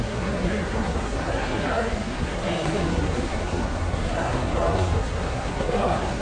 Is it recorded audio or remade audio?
remade